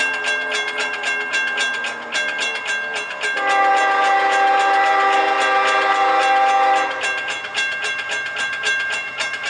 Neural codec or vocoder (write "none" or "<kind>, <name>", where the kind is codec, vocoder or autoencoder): none